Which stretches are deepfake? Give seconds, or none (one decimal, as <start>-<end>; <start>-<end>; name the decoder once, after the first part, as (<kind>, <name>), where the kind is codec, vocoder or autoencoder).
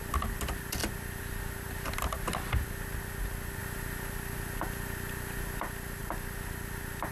none